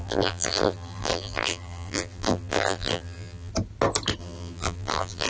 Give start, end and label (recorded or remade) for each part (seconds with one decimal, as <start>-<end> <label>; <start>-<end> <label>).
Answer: 0.0-3.5 remade; 3.5-4.2 recorded; 4.2-5.3 remade